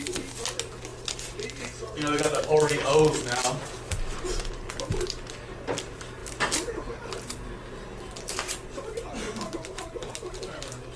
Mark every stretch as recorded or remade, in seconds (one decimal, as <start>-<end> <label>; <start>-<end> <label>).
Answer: 0.0-11.0 recorded